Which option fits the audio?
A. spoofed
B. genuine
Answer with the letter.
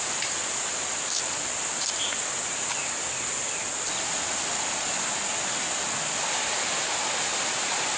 B